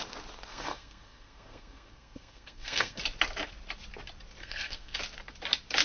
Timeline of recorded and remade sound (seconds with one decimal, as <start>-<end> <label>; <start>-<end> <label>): 0.0-0.5 recorded; 0.5-3.0 remade; 3.0-4.4 recorded; 4.4-5.0 remade; 5.0-5.8 recorded